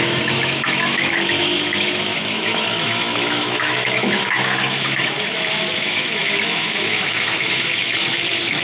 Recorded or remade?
remade